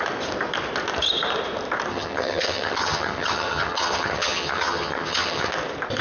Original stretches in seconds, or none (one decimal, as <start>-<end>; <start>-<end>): 0.0-1.9; 5.5-6.0